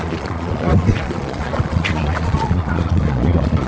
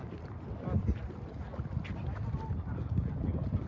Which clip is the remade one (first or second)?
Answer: first